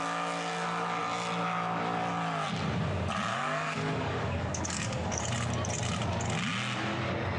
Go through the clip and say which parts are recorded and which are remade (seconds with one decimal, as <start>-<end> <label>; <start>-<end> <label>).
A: 0.0-3.3 recorded; 3.3-5.2 remade; 5.2-7.4 recorded